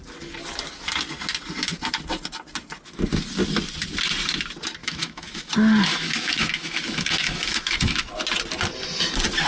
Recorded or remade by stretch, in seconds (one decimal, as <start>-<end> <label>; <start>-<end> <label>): 0.0-4.8 recorded; 4.8-5.5 remade; 5.5-5.9 recorded; 5.9-8.1 remade; 8.1-9.5 recorded